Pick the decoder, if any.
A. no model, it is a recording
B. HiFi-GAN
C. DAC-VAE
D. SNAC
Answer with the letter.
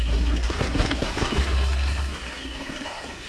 D